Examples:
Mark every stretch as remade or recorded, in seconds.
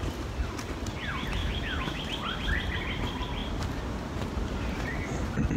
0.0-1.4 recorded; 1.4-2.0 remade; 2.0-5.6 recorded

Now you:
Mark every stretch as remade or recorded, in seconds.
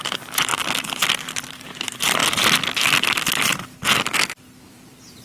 0.0-0.5 remade; 0.5-1.5 recorded; 1.5-2.2 remade; 2.2-4.7 recorded; 4.7-5.2 remade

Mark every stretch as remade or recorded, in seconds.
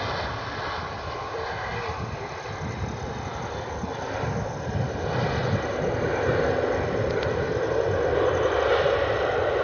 0.0-9.6 recorded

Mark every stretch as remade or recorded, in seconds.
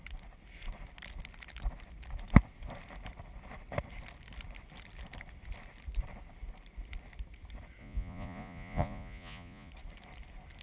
0.0-7.8 recorded; 7.8-9.7 remade; 9.7-10.6 recorded